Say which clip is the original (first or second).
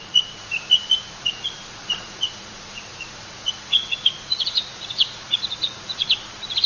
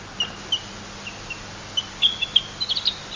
second